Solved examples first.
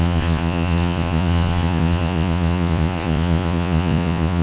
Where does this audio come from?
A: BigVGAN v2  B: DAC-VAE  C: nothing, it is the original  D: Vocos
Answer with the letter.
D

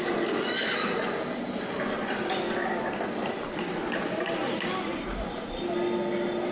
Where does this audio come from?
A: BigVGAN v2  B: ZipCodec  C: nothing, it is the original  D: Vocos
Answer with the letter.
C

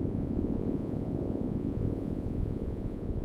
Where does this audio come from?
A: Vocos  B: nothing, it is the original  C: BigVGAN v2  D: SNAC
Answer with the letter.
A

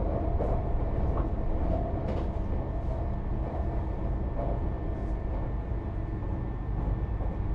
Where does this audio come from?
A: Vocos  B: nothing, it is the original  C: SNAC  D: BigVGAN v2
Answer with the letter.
B